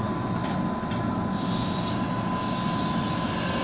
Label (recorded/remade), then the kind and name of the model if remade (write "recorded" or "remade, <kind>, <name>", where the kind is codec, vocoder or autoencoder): recorded